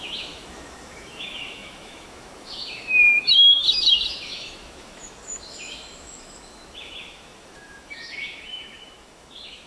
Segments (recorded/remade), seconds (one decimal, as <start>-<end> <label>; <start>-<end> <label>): 0.0-9.7 remade